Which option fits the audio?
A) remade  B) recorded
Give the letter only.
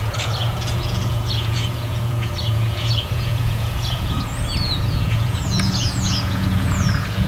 A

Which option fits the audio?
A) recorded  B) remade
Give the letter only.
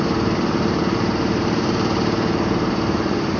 B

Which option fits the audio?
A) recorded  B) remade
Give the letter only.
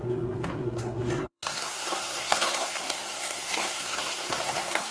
B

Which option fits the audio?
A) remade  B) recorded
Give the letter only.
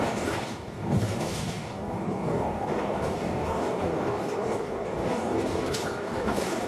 A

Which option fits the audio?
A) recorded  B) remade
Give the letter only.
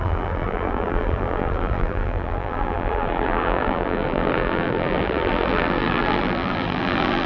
B